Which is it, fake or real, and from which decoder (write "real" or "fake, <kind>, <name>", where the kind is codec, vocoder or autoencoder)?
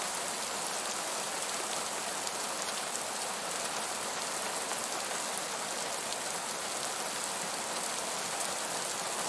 real